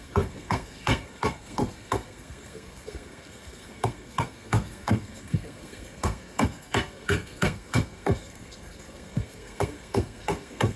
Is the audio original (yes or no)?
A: no